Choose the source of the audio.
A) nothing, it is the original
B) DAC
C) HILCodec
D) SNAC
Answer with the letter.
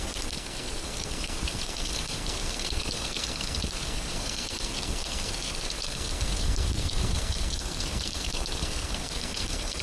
D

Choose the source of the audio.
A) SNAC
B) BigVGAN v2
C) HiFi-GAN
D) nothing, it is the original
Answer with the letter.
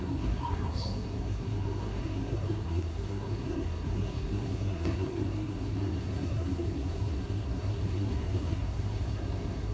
A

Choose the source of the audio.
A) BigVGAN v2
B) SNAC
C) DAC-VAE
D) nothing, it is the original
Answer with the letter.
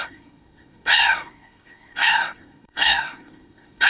B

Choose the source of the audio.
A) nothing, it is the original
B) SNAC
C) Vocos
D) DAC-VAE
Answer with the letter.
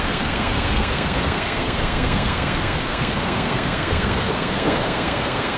B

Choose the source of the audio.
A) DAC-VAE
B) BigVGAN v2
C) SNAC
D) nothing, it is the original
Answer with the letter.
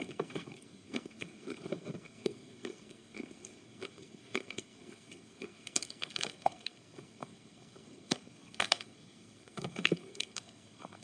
C